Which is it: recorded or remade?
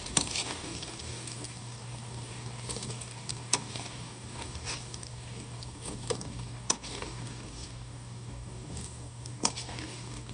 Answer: remade